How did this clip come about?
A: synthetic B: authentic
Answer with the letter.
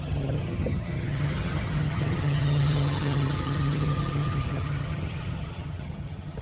A